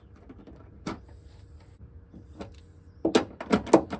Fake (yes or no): no